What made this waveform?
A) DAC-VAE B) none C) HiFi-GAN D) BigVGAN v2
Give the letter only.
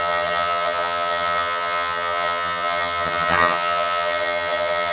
C